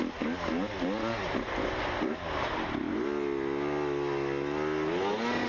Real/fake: real